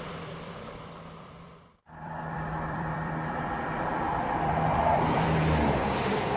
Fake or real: fake